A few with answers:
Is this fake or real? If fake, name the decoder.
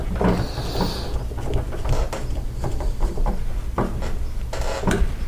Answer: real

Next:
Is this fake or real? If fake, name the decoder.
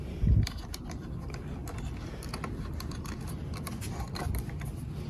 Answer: real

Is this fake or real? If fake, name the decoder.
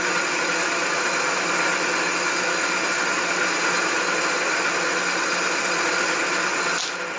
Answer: real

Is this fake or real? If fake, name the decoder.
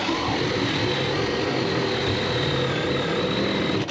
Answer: real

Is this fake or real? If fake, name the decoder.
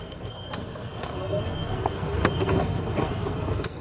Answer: fake, codec, SNAC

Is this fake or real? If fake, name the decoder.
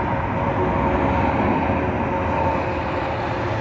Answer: real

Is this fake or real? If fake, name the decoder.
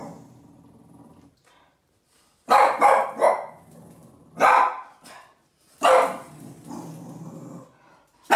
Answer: real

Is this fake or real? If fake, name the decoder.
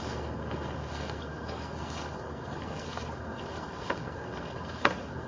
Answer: fake, codec, SNAC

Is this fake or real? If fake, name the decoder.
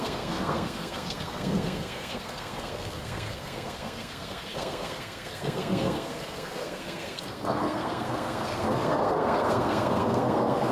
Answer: fake, codec, SNAC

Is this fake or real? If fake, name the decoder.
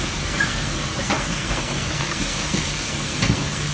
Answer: fake, codec, SNAC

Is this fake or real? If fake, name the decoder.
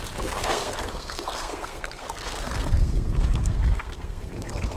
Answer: fake, codec, SNAC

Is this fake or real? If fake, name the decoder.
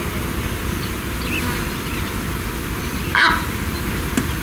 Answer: real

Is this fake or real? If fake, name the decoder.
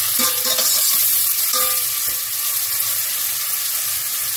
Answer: real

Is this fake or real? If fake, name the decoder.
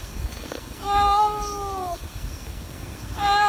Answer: fake, codec, SNAC